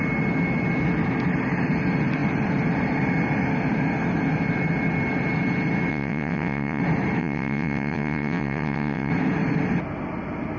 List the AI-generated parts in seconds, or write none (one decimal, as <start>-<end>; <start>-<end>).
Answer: 5.9-6.8; 7.2-9.1